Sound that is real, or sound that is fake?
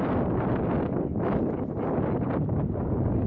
real